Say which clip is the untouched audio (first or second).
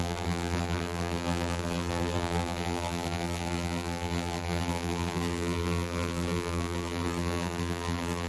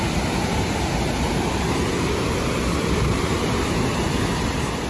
second